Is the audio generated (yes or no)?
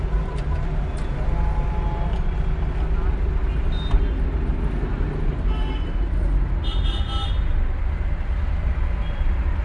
no